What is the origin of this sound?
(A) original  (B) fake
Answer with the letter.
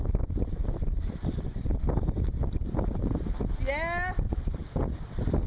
A